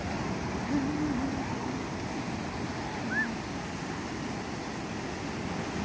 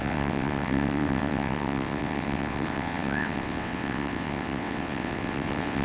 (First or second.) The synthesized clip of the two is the second